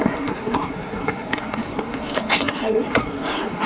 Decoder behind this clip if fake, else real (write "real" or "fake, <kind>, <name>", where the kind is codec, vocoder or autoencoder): fake, codec, SNAC